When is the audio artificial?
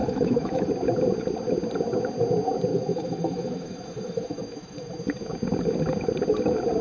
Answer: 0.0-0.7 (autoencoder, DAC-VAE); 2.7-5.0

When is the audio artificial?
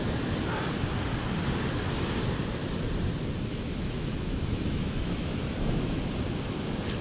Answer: 3.5-6.0 (autoencoder, DAC-VAE)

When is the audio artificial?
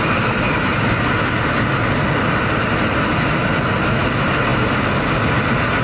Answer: none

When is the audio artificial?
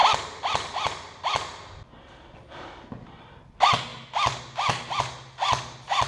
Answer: none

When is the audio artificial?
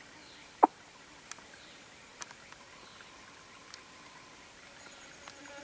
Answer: none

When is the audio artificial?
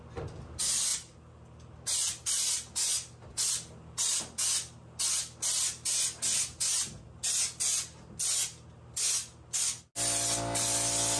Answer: none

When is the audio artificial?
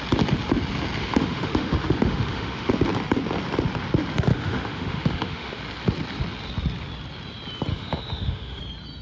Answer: 1.0-2.7 (autoencoder, DAC-VAE); 4.3-5.6; 7.7-8.6